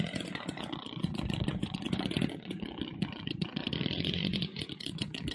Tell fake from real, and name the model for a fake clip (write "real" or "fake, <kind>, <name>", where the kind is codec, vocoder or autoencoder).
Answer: fake, vocoder, Vocos